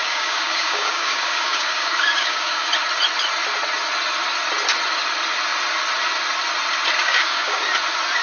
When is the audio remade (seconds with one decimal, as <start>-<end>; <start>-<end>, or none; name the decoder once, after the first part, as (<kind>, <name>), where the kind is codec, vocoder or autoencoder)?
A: 0.0-2.7 (codec, DAC); 7.0-7.6